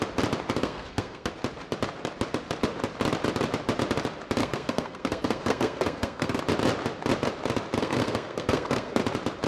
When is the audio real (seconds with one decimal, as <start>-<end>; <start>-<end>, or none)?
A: 0.0-0.6; 1.3-4.4; 6.4-7.8; 9.0-9.5